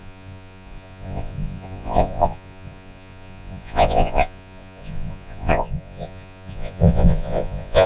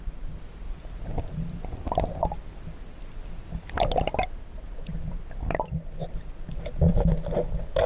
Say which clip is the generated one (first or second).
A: first